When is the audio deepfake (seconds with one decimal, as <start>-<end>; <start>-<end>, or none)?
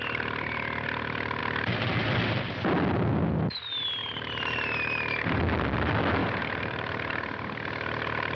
4.0-5.4; 6.2-7.1